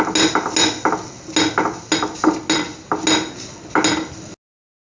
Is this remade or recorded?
recorded